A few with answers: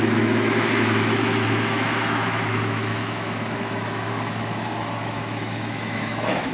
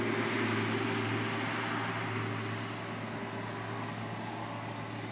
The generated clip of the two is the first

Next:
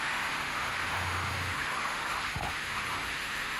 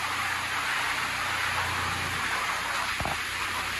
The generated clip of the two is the first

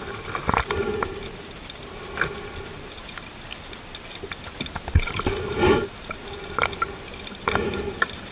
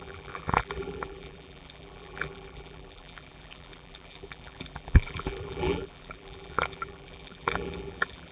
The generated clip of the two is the second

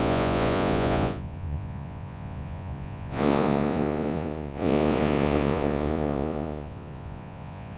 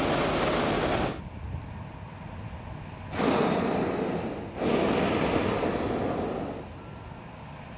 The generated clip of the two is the first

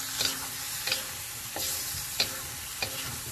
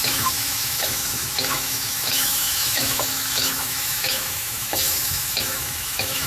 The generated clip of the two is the second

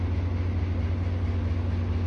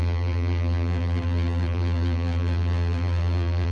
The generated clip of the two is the second